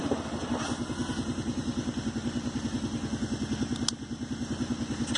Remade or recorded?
recorded